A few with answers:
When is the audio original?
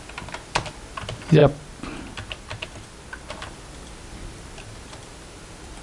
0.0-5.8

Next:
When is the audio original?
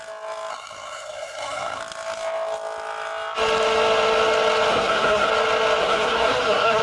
0.0-0.5; 1.8-4.7; 5.3-5.8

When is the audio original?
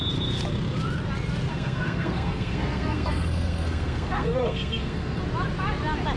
0.0-1.5; 5.2-6.2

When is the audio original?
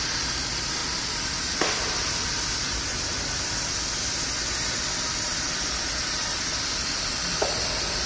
0.0-8.1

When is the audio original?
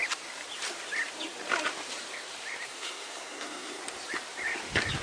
0.0-2.7; 3.8-5.0